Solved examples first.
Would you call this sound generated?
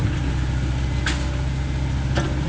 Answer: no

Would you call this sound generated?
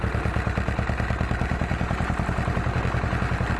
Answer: no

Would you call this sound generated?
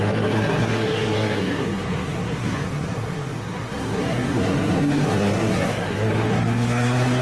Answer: yes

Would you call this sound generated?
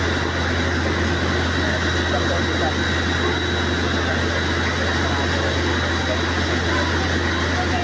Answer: no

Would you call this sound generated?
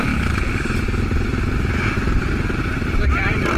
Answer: yes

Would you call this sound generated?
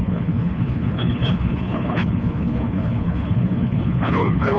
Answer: yes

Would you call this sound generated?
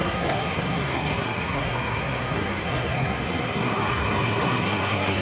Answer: yes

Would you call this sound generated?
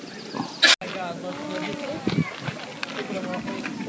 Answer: no